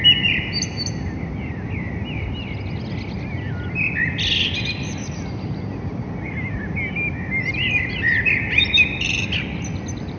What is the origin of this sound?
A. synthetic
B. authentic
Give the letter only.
B